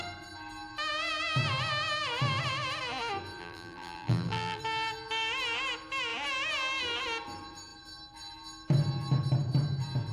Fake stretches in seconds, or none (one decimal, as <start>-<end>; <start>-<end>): 3.4-4.6